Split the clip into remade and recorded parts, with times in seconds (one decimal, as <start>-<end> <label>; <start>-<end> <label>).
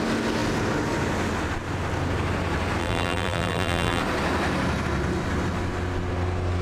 0.0-2.8 recorded; 2.8-4.0 remade; 4.0-6.6 recorded